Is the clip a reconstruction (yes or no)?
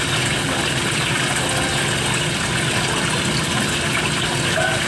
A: no